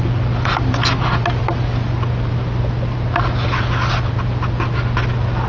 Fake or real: real